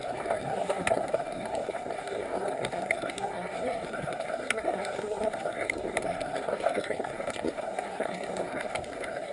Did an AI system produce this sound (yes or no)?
yes